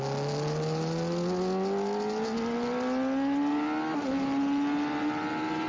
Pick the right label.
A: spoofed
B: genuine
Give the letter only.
B